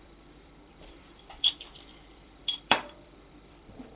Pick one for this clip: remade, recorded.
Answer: remade